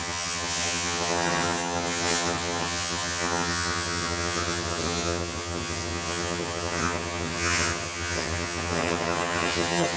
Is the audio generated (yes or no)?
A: yes